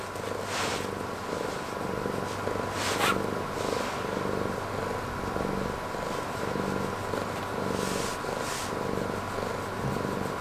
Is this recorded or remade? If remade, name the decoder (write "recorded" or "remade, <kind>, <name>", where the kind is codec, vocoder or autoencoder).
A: recorded